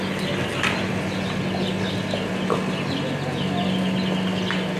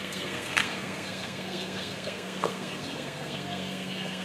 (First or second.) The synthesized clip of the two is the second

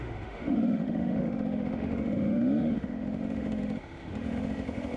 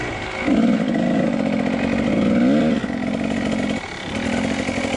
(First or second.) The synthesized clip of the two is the first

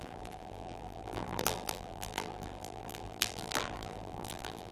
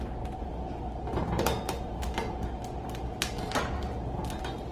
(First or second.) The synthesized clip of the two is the first